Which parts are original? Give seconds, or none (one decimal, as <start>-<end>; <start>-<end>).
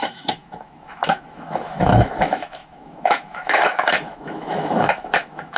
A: none